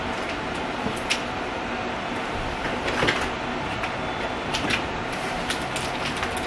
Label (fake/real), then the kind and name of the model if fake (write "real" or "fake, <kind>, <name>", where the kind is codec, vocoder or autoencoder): real